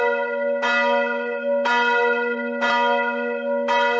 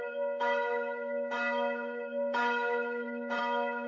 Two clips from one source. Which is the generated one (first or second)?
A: second